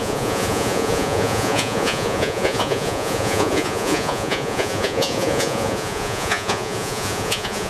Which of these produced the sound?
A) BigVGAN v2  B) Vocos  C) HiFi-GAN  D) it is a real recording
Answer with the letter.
B